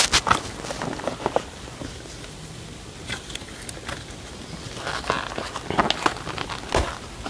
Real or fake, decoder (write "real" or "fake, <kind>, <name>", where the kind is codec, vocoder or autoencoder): real